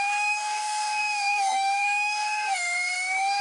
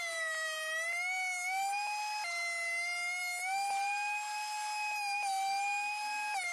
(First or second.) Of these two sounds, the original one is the second